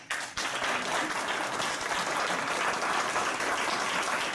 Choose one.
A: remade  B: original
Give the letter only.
B